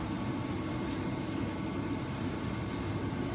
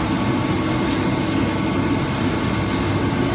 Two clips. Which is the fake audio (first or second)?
first